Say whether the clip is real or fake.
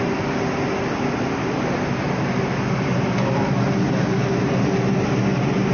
real